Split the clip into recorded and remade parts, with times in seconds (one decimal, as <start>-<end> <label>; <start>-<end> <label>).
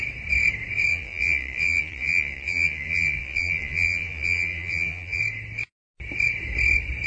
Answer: 0.0-0.9 recorded; 0.9-5.2 remade; 5.2-7.1 recorded